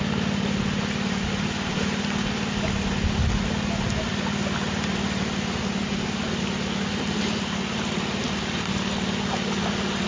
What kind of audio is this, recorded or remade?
recorded